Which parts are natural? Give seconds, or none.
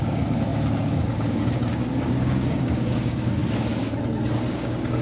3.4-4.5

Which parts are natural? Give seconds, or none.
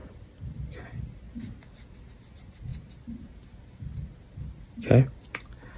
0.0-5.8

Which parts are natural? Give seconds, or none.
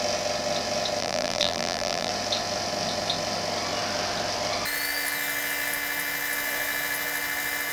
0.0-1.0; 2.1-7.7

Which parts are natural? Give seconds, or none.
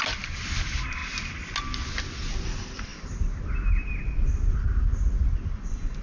0.0-6.0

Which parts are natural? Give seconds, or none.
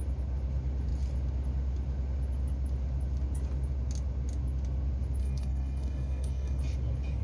0.0-5.2; 6.6-7.2